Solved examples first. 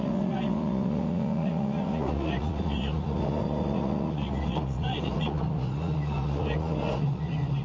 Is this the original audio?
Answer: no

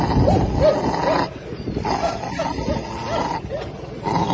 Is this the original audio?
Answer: yes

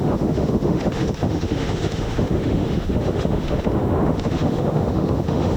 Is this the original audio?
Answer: no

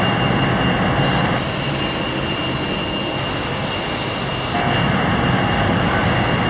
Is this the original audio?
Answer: yes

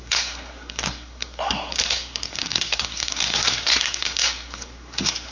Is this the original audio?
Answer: no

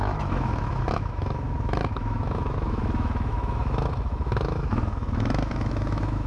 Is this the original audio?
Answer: no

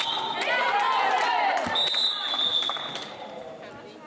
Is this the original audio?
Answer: yes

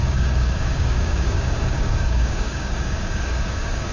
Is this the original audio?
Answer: no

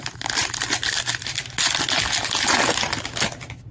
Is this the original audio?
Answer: yes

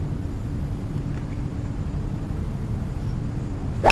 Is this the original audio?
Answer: yes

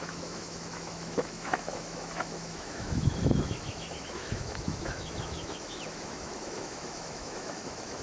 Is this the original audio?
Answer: no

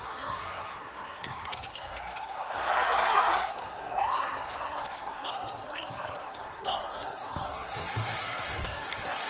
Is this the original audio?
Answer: no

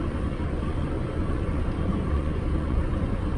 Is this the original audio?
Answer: no